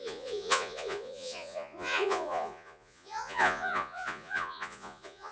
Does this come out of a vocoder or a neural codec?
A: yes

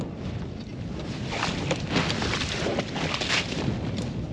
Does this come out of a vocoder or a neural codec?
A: no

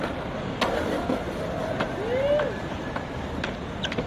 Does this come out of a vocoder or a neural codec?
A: no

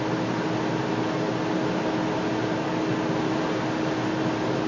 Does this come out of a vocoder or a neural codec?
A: no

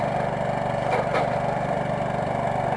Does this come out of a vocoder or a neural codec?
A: no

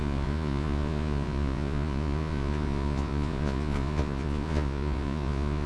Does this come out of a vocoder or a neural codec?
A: yes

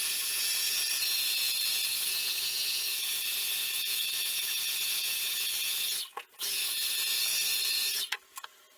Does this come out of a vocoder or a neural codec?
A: yes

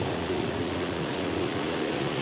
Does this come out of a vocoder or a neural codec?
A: yes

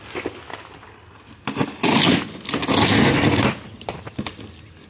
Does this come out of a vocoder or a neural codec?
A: no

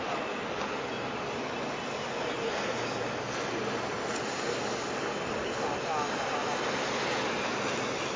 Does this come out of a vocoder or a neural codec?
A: no